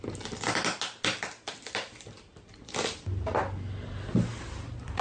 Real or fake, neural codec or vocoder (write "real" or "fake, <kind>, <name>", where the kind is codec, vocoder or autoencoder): real